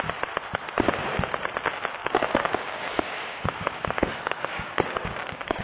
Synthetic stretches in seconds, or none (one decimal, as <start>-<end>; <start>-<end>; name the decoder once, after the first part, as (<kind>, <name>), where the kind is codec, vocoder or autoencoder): 2.0-5.6 (codec, DAC)